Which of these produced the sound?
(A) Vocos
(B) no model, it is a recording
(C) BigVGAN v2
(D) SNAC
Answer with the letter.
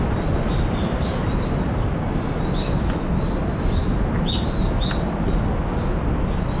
B